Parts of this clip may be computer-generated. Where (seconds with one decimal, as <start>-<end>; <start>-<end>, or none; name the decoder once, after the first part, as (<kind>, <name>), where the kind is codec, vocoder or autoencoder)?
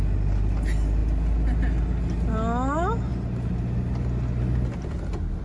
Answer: none